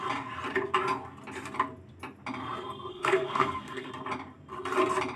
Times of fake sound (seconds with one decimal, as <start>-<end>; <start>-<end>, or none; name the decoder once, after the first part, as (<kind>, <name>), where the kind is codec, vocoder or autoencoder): 2.9-3.9 (codec, SNAC)